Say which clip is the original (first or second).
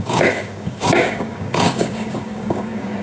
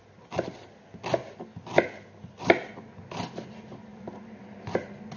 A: second